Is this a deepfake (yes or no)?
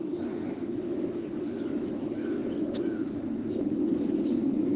yes